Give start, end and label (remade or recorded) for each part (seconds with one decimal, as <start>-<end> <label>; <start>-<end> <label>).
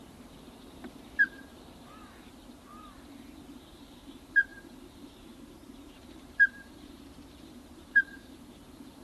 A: 0.0-9.0 remade